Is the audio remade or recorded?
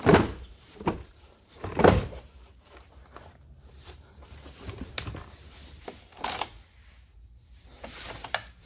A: remade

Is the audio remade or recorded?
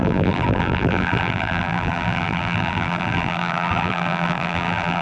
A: remade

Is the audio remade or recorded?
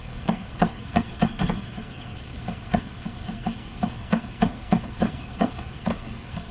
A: remade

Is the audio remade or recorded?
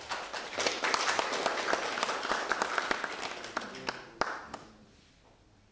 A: recorded